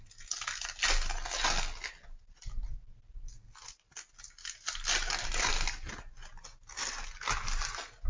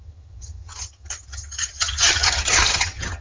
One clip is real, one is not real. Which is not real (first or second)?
second